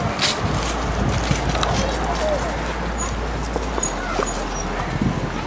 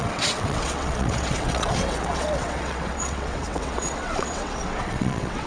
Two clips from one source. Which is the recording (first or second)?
first